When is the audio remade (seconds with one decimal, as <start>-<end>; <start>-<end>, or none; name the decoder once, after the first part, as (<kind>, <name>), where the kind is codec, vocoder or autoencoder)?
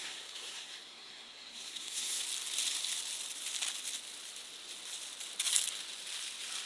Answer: 0.0-2.2 (codec, SNAC)